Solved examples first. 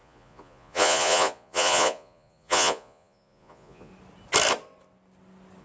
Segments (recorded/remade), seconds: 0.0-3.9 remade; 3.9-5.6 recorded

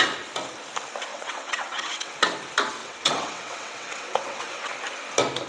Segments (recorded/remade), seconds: 0.0-1.1 recorded; 1.1-2.2 remade; 2.2-2.8 recorded; 2.8-4.7 remade; 4.7-5.5 recorded

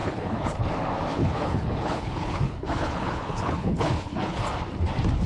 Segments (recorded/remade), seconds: 0.0-0.7 remade; 0.7-1.2 recorded; 1.2-4.4 remade; 4.4-5.3 recorded

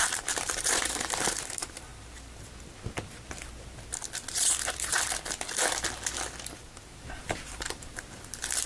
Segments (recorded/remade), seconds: 0.0-1.9 remade; 1.9-6.8 recorded; 6.8-8.7 remade

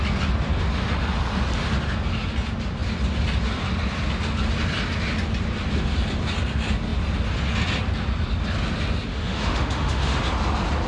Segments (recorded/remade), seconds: 0.0-9.1 recorded; 9.1-10.2 remade; 10.2-10.9 recorded

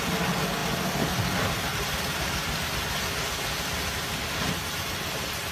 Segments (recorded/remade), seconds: 0.0-5.5 recorded

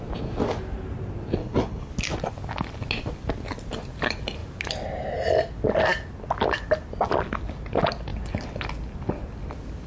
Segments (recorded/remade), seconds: 0.0-1.4 recorded; 1.4-1.9 remade; 1.9-9.9 recorded

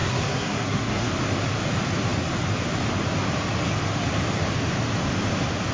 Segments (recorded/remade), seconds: 0.0-1.1 remade; 1.1-5.7 recorded